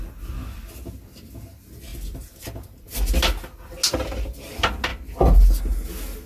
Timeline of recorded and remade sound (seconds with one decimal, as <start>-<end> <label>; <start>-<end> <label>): 0.0-1.9 recorded; 1.9-3.2 remade; 3.2-6.3 recorded